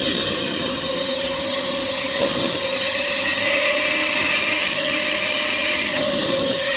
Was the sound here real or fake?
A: fake